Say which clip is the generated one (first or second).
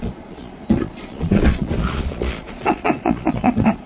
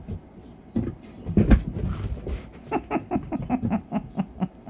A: first